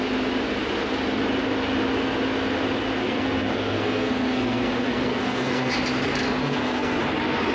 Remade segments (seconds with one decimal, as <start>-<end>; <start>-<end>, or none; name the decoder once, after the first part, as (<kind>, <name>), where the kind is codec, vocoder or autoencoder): 3.0-5.7 (codec, SNAC); 6.4-7.0

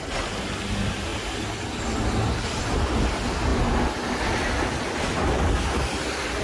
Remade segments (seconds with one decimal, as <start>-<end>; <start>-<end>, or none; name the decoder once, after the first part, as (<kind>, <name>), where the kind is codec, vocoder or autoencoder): none

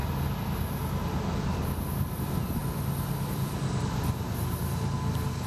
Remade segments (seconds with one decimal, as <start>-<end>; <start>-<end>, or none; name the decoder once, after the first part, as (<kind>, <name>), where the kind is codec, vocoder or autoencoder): none